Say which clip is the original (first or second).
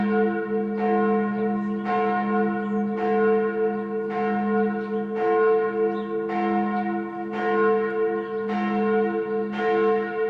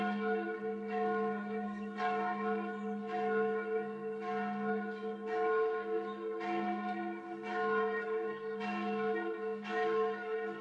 first